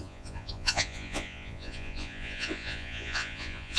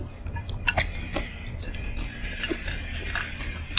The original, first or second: second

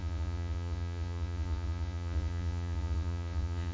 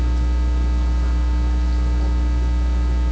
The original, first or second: second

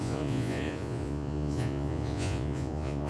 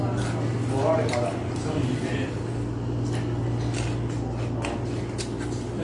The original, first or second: second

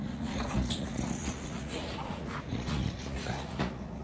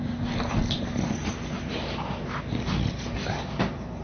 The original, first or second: second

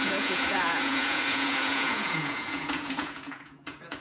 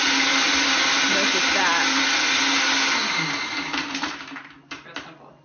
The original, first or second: second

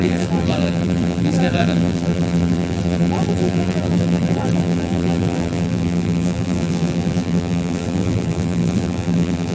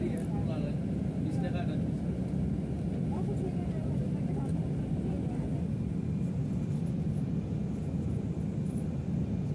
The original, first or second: second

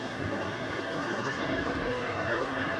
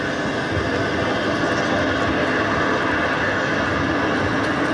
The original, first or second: second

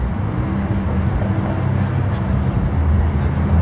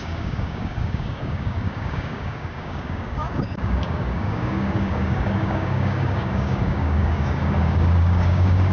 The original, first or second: first